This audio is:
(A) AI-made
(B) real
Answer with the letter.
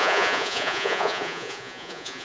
A